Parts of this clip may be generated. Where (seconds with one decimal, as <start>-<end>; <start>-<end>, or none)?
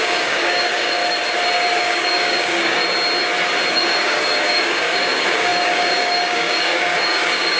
0.0-1.0; 1.8-2.8; 3.7-7.6